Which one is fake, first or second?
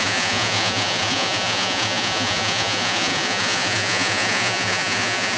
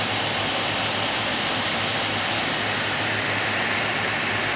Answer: first